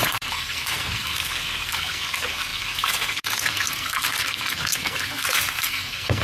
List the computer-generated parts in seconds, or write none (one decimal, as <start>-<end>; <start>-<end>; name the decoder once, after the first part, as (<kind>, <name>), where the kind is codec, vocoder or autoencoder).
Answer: 0.0-6.2 (codec, SNAC)